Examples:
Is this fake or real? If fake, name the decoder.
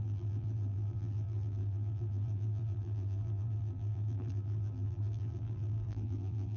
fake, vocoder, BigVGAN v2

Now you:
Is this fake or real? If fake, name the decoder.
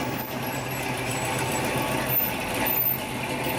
real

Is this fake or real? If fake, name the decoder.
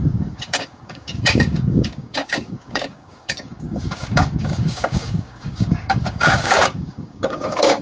fake, codec, DAC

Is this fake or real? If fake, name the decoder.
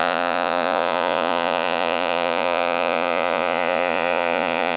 fake, vocoder, Vocos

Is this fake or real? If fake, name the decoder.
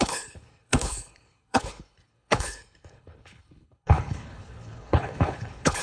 fake, codec, HILCodec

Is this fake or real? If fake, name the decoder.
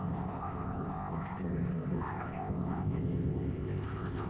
fake, codec, ZipCodec